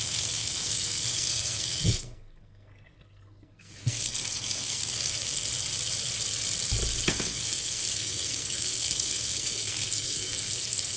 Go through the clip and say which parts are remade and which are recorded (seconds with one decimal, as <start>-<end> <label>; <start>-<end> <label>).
0.0-5.5 remade; 5.5-7.1 recorded; 7.1-11.0 remade

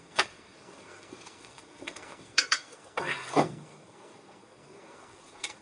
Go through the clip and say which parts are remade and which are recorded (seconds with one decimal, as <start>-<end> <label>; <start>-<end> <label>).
0.0-5.6 remade

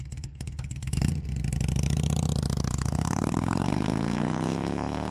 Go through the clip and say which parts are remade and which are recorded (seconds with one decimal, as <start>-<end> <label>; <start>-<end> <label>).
0.0-1.1 remade; 1.1-2.7 recorded; 2.7-5.1 remade

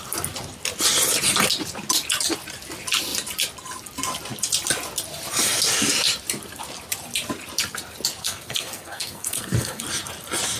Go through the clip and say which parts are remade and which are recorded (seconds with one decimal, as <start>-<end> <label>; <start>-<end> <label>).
0.0-8.2 recorded; 8.2-9.8 remade; 9.8-10.6 recorded

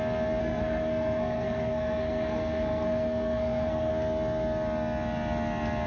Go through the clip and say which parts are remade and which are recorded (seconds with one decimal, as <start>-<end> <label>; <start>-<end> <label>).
0.0-0.4 recorded; 0.4-3.9 remade; 3.9-5.9 recorded

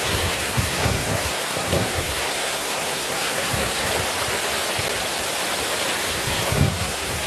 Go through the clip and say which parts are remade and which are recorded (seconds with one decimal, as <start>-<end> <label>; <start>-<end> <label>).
0.0-3.9 remade; 3.9-6.1 recorded; 6.1-7.3 remade